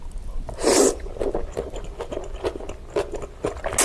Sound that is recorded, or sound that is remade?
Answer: recorded